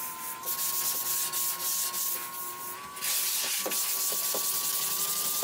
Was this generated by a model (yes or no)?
no